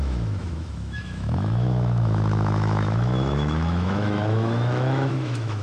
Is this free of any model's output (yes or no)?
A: no